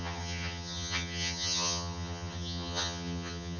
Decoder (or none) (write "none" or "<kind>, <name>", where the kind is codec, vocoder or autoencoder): vocoder, HiFi-GAN